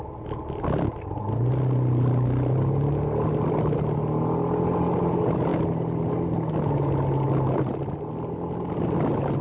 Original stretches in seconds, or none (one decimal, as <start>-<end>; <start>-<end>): 0.0-9.4